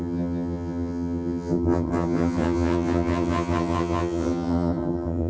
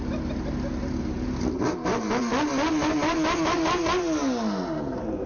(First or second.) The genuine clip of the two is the second